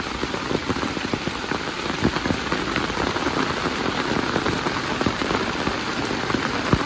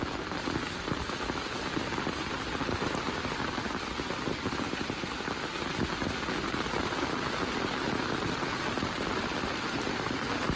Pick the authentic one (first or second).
second